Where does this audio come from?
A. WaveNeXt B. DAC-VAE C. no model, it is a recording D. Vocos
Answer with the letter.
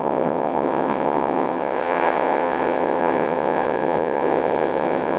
A